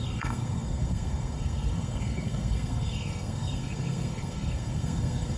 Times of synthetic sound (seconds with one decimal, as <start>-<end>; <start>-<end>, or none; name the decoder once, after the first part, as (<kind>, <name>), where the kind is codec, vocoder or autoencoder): 0.0-5.4 (codec, SNAC)